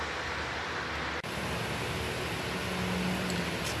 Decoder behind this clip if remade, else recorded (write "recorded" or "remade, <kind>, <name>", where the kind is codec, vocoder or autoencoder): recorded